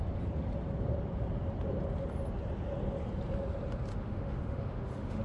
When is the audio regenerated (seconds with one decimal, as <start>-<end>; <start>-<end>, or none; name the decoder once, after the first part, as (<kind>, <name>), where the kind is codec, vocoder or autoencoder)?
3.9-5.2 (autoencoder, DAC-VAE)

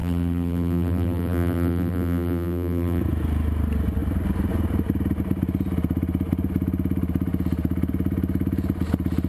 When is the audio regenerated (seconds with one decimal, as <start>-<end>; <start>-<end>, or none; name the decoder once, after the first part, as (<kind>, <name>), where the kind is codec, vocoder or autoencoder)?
0.0-3.0 (vocoder, BigVGAN v2)

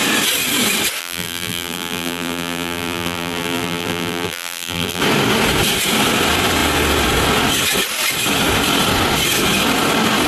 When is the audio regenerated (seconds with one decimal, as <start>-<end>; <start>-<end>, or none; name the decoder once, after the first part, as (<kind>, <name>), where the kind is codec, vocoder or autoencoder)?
1.0-5.0 (vocoder, BigVGAN v2)